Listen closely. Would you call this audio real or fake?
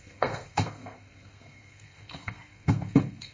fake